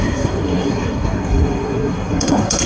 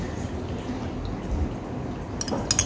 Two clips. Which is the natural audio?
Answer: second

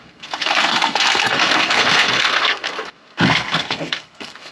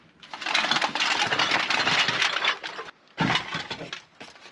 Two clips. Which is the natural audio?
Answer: second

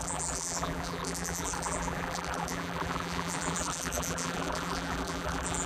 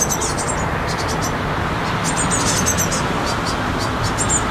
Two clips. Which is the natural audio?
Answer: second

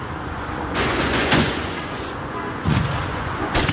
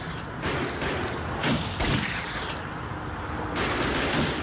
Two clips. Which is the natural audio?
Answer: second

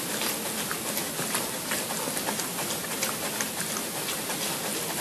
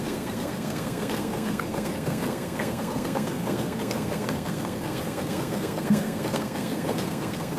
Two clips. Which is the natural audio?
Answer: first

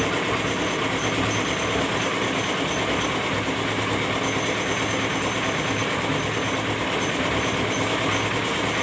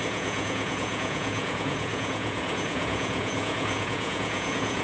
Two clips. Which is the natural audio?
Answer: first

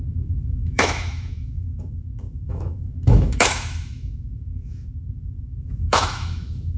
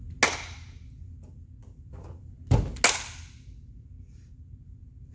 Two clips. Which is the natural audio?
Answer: second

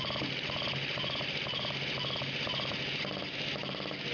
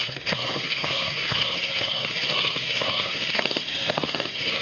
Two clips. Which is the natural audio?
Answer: first